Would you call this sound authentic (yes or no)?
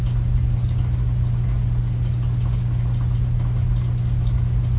yes